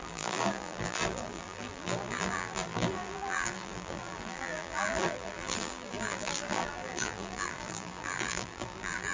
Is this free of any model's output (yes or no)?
no